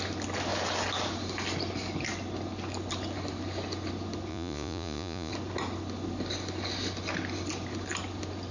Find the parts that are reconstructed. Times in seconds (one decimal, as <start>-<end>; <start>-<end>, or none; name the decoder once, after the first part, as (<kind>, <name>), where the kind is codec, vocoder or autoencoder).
4.3-5.3 (vocoder, Vocos)